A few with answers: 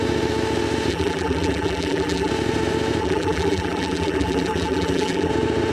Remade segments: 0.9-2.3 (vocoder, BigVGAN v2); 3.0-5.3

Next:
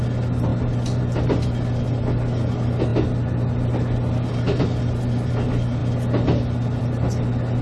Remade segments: none

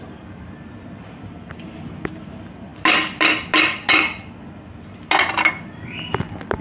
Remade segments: none

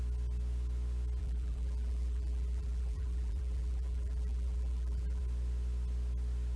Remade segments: 1.2-5.2 (vocoder, BigVGAN v2)